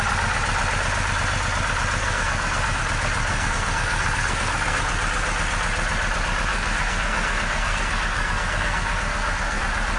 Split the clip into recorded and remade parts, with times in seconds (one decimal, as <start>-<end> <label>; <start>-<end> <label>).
0.0-2.0 recorded; 2.0-2.8 remade; 2.8-3.3 recorded; 3.3-4.8 remade; 4.8-6.5 recorded; 6.5-9.6 remade; 9.6-10.0 recorded